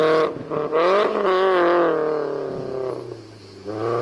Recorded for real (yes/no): yes